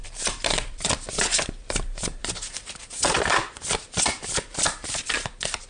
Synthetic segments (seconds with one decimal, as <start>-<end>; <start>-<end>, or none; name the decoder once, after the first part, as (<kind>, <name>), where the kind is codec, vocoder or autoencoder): 0.0-5.7 (vocoder, BigVGAN v2)